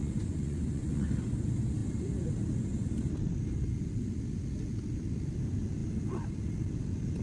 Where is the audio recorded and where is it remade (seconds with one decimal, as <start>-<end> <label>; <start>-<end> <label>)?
0.0-1.1 remade; 1.1-7.2 recorded

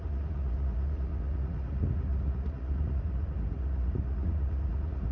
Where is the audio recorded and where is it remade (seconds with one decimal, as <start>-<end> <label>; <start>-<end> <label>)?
0.0-5.1 remade

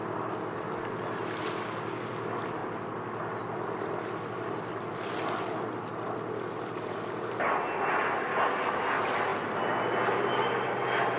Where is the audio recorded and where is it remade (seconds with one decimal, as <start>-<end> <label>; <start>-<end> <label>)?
0.0-11.2 recorded

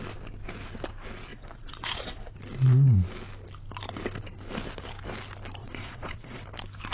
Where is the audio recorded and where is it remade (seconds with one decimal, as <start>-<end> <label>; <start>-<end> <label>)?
0.0-1.3 recorded; 1.3-2.3 remade; 2.3-5.6 recorded; 5.6-6.4 remade; 6.4-6.9 recorded

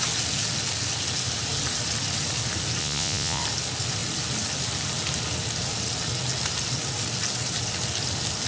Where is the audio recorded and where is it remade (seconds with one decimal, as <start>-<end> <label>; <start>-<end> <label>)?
0.0-2.8 recorded; 2.8-3.4 remade; 3.4-8.5 recorded

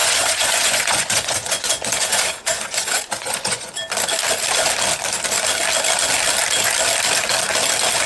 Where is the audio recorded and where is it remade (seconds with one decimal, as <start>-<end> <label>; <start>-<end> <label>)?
0.0-3.7 remade; 3.7-8.1 recorded

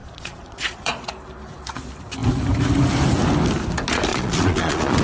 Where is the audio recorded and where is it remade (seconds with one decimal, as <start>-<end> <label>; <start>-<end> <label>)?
0.0-1.1 remade; 1.1-4.1 recorded; 4.1-5.0 remade

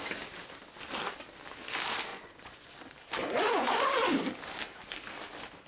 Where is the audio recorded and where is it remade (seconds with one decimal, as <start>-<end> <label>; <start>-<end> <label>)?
0.0-2.1 recorded; 2.1-2.7 remade; 2.7-3.2 recorded; 3.2-3.9 remade; 3.9-5.7 recorded